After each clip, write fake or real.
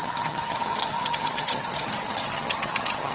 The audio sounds fake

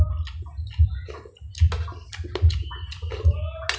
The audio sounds real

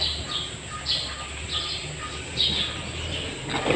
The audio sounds real